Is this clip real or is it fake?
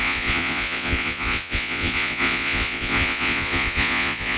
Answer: fake